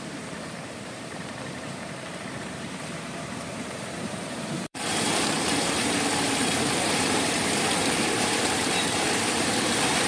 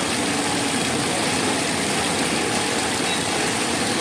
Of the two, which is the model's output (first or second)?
first